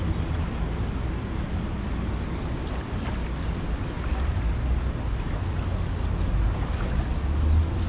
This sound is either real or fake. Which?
real